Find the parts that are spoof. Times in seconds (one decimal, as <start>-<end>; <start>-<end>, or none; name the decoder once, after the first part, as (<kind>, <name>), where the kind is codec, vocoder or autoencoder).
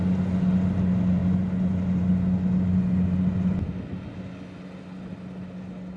none